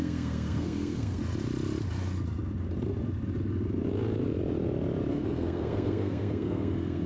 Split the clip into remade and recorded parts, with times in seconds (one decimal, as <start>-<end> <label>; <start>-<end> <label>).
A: 0.0-1.2 remade; 1.2-5.1 recorded; 5.1-7.1 remade